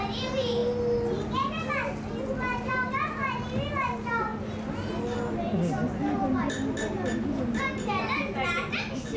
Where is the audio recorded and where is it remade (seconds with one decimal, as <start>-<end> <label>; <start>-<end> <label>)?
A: 0.0-9.2 recorded

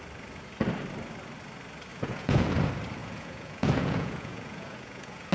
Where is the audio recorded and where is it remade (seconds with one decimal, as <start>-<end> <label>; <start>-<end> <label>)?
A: 0.0-1.9 recorded; 1.9-2.5 remade; 2.5-3.0 recorded; 3.0-5.3 remade

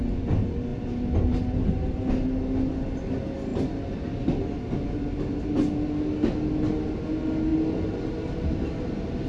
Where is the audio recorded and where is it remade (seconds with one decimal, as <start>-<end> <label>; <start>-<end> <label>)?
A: 0.0-9.3 recorded